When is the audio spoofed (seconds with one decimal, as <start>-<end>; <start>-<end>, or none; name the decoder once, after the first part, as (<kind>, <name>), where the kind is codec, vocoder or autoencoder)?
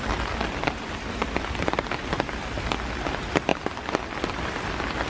none